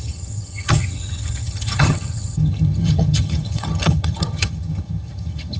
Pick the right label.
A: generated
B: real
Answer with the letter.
A